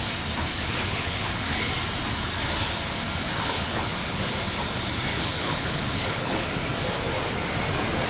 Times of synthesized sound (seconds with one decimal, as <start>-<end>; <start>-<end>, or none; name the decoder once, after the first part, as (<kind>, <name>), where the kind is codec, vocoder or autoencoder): 0.5-1.7 (codec, HILCodec); 3.2-4.2; 5.1-6.6

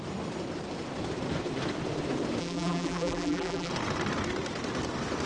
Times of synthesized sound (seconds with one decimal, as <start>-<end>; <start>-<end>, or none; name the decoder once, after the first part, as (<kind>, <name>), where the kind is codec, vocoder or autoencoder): 2.4-3.7 (vocoder, BigVGAN v2)

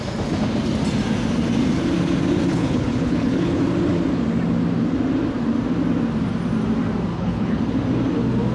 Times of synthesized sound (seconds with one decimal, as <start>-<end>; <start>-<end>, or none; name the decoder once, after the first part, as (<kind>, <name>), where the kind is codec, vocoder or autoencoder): 2.5-3.6 (codec, HILCodec); 7.1-7.6